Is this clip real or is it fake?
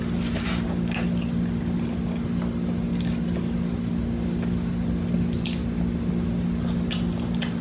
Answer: real